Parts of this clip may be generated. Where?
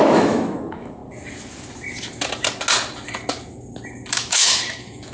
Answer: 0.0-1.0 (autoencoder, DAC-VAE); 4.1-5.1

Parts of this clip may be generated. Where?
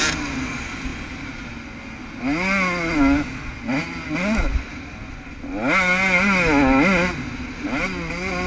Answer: none